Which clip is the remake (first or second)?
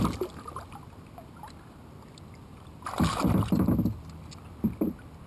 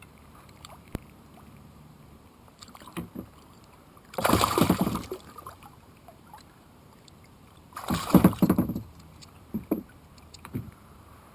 second